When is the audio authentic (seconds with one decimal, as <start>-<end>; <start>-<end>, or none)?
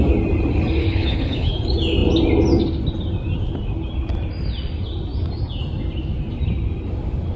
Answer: 0.0-0.8; 1.5-7.4